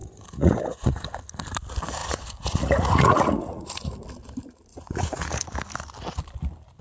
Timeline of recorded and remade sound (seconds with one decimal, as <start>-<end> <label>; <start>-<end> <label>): 0.0-1.0 remade; 1.0-2.0 recorded; 2.0-3.9 remade; 3.9-4.7 recorded; 4.7-5.4 remade; 5.4-6.8 recorded